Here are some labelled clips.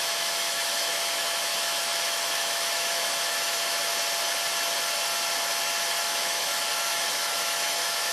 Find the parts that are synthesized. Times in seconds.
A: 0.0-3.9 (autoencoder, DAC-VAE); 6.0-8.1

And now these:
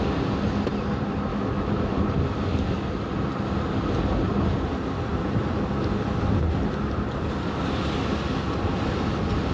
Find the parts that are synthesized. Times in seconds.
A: 1.3-2.0 (autoencoder, DAC-VAE)

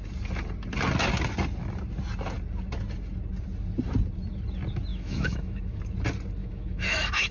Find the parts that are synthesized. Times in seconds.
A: 4.9-5.8 (autoencoder, DAC-VAE); 6.4-7.3

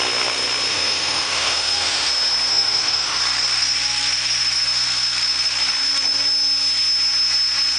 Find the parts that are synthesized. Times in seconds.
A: 0.7-2.1 (autoencoder, DAC-VAE); 2.5-3.2

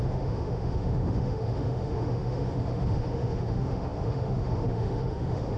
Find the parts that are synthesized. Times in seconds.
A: 0.0-5.6 (autoencoder, DAC-VAE)